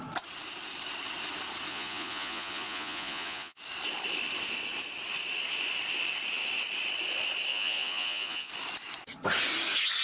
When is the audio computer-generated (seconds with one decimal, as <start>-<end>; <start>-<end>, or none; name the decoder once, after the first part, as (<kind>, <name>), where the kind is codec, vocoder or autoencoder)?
1.7-3.6 (vocoder, Vocos); 7.5-8.5